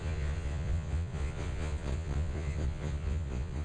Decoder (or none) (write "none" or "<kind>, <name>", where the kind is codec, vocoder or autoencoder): vocoder, Vocos